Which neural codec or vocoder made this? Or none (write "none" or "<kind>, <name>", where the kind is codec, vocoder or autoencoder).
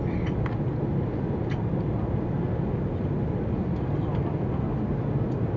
none